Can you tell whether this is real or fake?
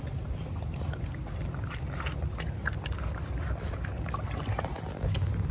real